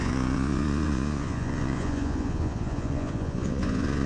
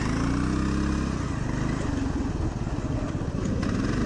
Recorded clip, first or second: second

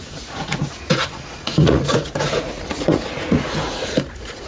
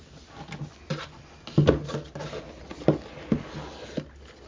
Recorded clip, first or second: second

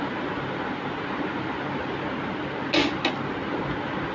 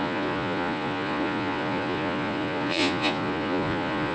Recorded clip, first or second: first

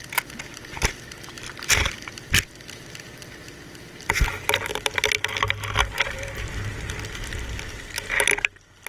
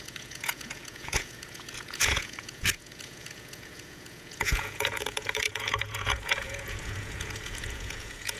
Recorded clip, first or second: first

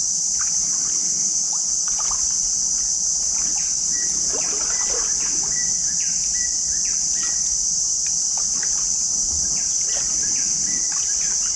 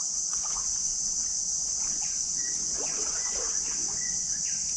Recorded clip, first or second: first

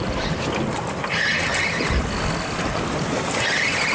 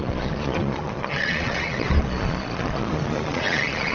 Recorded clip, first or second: first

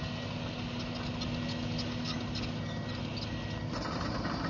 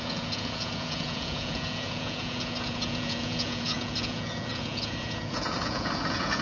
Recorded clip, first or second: first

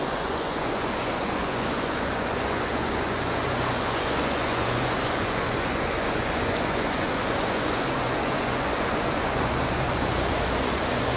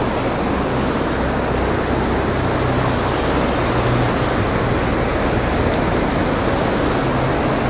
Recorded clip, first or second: second